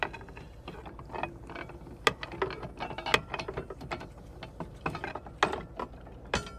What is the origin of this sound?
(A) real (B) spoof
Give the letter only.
A